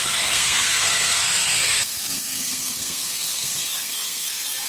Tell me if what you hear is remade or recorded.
remade